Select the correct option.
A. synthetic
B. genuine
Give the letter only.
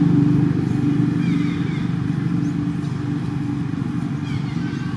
B